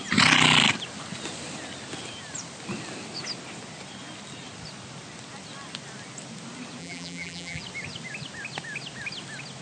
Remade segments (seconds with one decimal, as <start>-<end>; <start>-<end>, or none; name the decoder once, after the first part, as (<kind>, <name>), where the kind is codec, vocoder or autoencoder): 6.8-7.6 (vocoder, BigVGAN v2)